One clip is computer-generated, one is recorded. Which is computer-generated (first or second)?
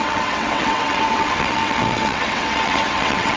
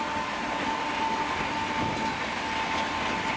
first